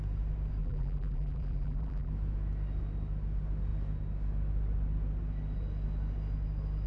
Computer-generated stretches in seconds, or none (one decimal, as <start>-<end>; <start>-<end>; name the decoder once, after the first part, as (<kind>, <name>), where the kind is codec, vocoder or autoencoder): 0.6-2.1 (vocoder, BigVGAN v2)